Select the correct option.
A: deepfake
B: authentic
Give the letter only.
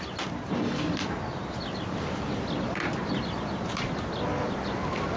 B